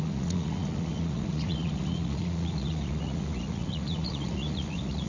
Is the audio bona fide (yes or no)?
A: no